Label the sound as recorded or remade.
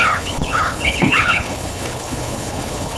remade